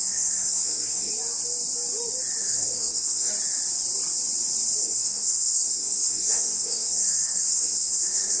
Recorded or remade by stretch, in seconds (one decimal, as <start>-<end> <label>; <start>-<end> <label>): 0.0-1.1 remade; 1.1-2.4 recorded; 2.4-3.3 remade; 3.3-4.8 recorded; 4.8-8.4 remade

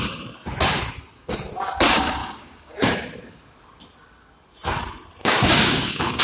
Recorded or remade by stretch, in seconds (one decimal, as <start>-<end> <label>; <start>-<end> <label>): 0.0-2.2 recorded; 2.2-2.9 remade; 2.9-5.2 recorded; 5.2-6.2 remade

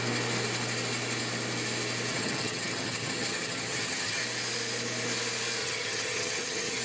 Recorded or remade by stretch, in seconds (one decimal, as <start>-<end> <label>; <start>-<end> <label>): 0.0-2.1 recorded; 2.1-4.2 remade; 4.2-5.6 recorded; 5.6-6.8 remade

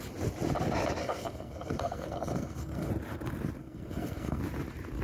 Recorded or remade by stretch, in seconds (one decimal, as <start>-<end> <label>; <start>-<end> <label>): 0.0-1.0 recorded; 1.0-2.9 remade; 2.9-3.6 recorded; 3.6-4.4 remade; 4.4-5.0 recorded

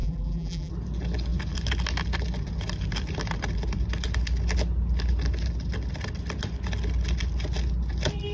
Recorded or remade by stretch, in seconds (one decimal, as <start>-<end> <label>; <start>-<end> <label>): 0.0-0.7 remade; 0.7-8.3 recorded

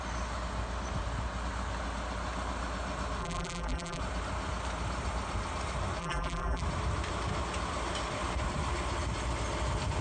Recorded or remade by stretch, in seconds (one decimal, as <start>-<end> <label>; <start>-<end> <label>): 0.0-3.2 recorded; 3.2-4.0 remade; 4.0-6.0 recorded; 6.0-6.6 remade; 6.6-10.0 recorded

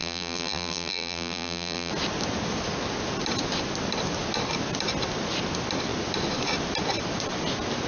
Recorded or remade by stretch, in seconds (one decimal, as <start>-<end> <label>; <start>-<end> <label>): 0.0-1.9 remade; 1.9-7.9 recorded

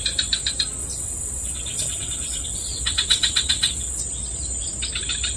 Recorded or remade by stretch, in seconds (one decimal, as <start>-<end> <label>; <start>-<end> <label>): 0.0-0.8 recorded; 0.8-4.0 remade; 4.0-5.4 recorded